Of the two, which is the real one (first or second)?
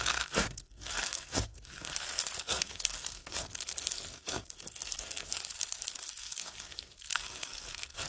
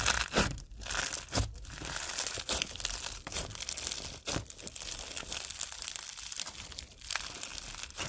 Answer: second